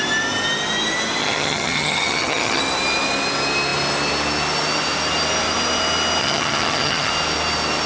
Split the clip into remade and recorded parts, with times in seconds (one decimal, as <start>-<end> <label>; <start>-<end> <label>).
0.0-1.2 recorded; 1.2-2.6 remade; 2.6-6.2 recorded; 6.2-7.1 remade; 7.1-7.9 recorded

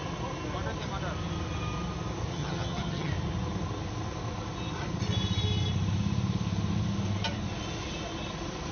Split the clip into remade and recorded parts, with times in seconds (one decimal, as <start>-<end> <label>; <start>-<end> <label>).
0.0-2.3 recorded; 2.3-3.1 remade; 3.1-8.7 recorded

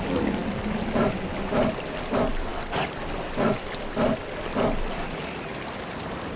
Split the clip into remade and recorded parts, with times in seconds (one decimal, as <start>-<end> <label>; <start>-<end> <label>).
0.0-6.4 recorded

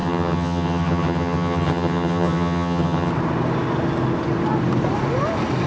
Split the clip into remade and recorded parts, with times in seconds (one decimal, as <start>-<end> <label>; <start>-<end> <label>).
0.0-3.1 remade; 3.1-5.7 recorded

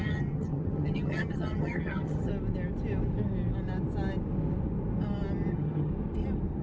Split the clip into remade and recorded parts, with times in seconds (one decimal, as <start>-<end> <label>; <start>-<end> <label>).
0.0-2.3 remade; 2.3-5.5 recorded; 5.5-5.9 remade; 5.9-6.6 recorded

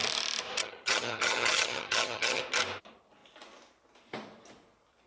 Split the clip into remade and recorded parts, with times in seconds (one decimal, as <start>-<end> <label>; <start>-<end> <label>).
0.0-0.6 recorded; 0.6-2.4 remade; 2.4-5.1 recorded